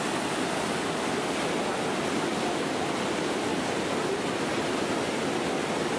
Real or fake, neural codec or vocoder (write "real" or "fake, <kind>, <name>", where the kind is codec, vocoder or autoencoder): real